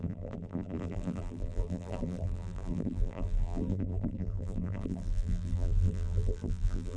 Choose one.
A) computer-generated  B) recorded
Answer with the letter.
A